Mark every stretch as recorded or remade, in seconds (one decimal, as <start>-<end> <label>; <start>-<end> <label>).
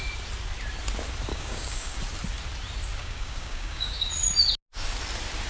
0.0-1.3 recorded; 1.3-2.0 remade; 2.0-3.0 recorded; 3.0-4.1 remade; 4.1-5.5 recorded